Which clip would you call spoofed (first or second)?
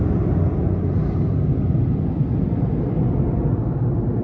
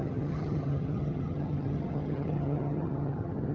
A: second